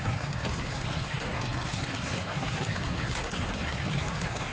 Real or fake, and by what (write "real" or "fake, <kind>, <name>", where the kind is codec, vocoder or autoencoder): fake, codec, SNAC